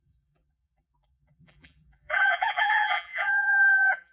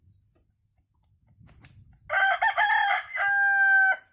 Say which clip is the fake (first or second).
first